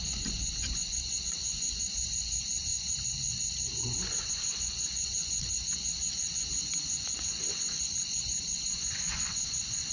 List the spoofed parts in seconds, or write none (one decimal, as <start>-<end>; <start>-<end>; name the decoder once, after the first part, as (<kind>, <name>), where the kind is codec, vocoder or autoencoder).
0.0-9.9 (vocoder, Vocos)